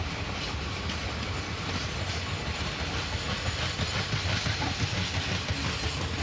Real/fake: real